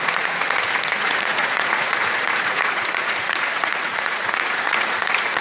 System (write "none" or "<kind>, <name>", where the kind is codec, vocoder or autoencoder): vocoder, Vocos